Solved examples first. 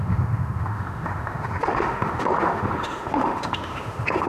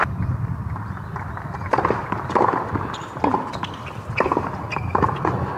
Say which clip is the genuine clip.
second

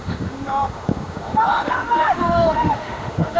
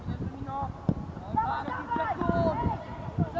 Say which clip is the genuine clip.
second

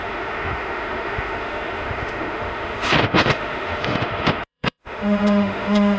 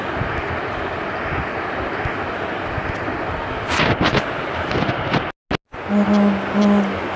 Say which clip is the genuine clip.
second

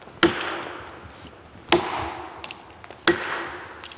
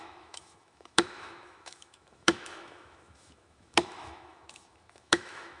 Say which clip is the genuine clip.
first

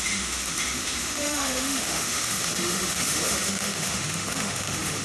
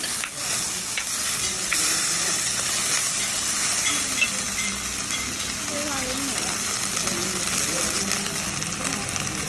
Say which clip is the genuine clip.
second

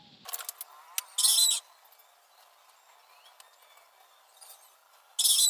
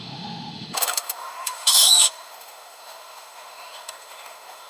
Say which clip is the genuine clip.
first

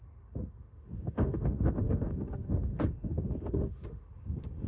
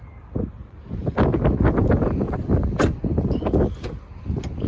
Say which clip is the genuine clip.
second